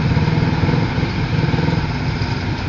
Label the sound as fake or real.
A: real